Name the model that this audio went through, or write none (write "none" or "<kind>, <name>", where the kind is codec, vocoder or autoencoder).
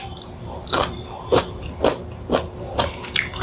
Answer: none